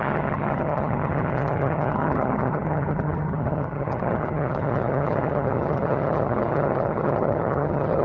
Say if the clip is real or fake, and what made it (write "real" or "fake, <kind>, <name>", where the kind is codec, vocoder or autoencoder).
fake, vocoder, HiFi-GAN